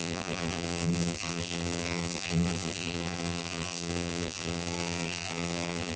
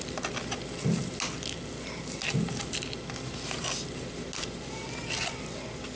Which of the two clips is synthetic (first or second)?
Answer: first